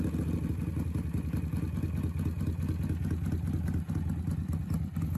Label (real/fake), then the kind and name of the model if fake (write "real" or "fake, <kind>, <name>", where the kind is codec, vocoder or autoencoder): real